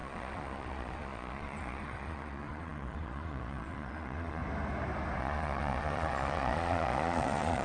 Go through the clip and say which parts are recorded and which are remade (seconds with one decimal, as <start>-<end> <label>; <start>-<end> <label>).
0.0-4.4 remade; 4.4-5.2 recorded; 5.2-7.6 remade